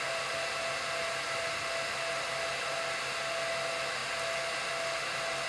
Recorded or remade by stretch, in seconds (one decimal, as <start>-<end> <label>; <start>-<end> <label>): 0.0-5.5 recorded